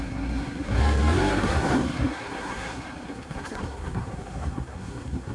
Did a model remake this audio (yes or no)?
yes